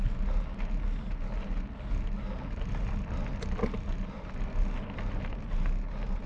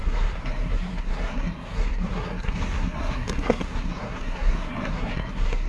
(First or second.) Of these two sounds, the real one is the first